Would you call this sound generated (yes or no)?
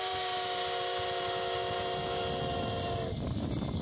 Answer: no